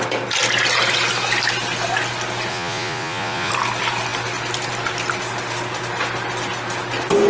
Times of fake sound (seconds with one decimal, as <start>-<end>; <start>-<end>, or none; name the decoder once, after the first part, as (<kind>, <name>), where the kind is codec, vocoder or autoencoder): 2.5-3.5 (vocoder, Vocos)